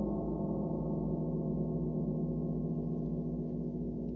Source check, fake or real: real